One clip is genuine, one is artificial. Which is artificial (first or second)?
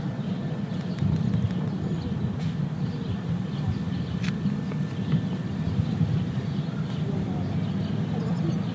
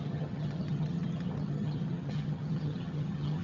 second